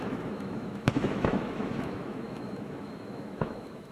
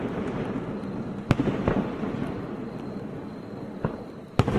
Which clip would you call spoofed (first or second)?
first